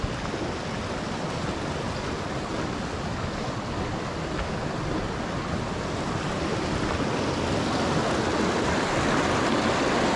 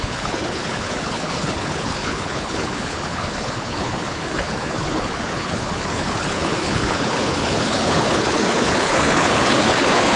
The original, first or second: first